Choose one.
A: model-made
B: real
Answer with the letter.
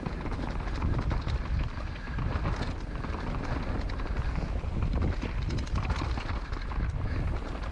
B